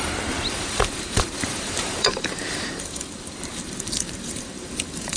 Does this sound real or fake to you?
fake